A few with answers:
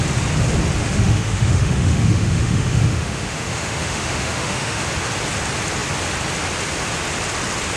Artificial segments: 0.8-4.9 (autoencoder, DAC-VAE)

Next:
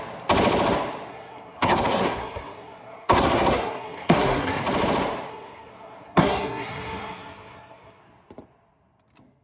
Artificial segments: 1.1-4.6 (codec, SNAC); 5.3-8.0

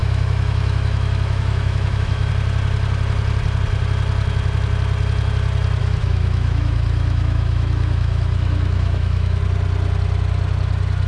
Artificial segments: 0.0-2.3 (autoencoder, DAC-VAE); 5.8-9.4

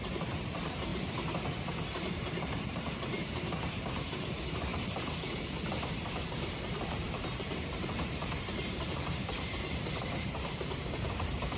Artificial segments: 0.0-0.9 (vocoder, BigVGAN v2); 2.1-10.8

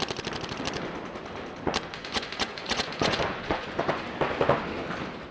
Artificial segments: 2.0-4.0 (vocoder, Vocos)